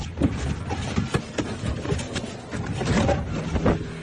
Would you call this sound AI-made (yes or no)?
no